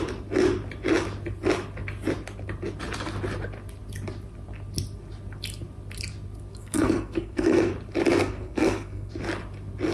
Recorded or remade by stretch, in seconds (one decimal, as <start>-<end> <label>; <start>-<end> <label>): 0.0-6.6 recorded; 6.6-7.7 remade; 7.7-8.2 recorded; 8.2-9.1 remade; 9.1-9.9 recorded